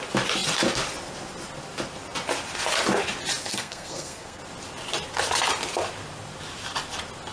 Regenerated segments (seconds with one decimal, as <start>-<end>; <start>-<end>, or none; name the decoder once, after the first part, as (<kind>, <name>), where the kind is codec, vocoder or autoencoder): 3.5-4.4 (codec, SNAC)